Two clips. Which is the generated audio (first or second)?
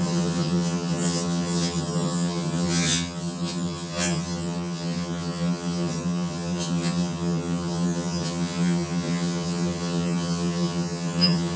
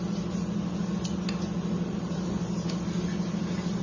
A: first